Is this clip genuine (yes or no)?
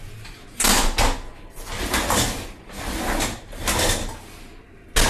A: yes